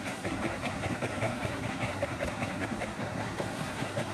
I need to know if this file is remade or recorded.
remade